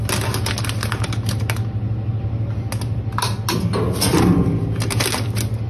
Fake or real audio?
real